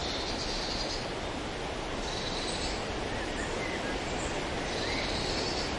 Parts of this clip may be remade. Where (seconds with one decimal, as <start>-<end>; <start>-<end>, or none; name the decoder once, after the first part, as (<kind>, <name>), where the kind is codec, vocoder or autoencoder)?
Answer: none